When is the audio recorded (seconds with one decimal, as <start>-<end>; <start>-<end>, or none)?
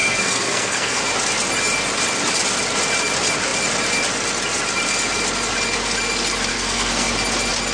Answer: 1.0-6.5; 7.1-7.7